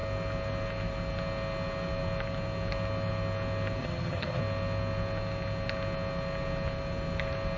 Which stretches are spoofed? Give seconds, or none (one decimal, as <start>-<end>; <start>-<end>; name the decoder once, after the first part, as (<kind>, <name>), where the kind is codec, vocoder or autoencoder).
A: 3.8-4.4 (vocoder, HiFi-GAN)